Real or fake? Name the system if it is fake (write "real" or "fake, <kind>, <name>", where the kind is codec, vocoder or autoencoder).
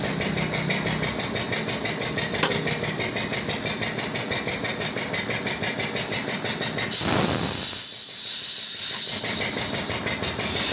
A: real